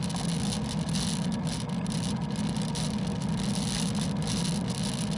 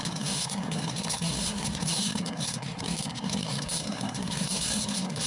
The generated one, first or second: second